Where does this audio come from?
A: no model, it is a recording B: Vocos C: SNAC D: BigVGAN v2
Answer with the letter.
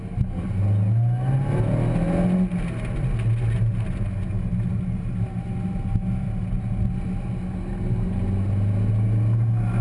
A